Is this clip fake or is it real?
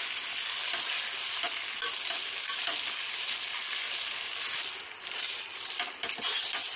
real